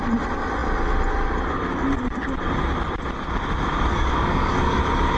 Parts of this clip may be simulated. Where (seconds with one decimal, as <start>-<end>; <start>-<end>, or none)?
3.9-4.8